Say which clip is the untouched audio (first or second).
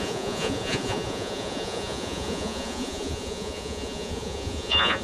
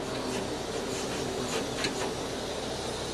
second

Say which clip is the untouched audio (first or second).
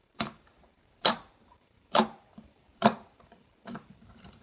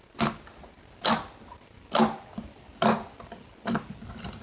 second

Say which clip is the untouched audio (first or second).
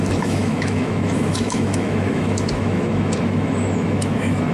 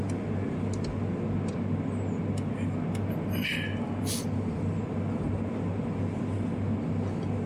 second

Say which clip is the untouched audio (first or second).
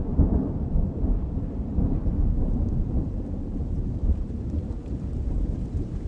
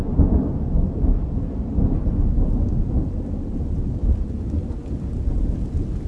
second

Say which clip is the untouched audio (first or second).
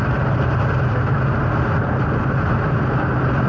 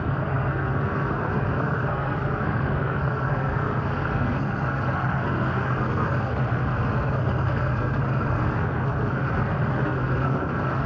first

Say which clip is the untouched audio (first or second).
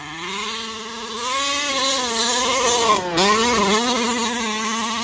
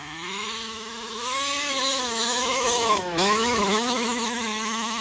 first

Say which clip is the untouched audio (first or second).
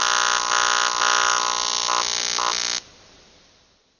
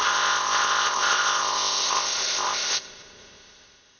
first